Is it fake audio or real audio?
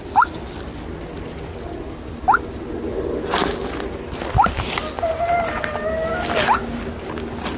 real